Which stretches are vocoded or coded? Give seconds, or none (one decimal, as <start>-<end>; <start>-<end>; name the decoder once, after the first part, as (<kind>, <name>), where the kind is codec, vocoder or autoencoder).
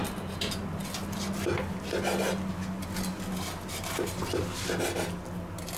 none